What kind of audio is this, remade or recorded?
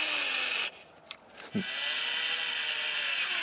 recorded